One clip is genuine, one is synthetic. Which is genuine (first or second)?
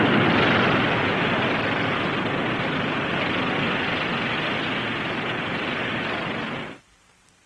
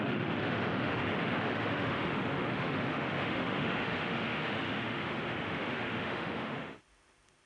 first